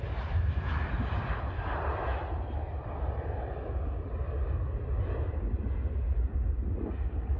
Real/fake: real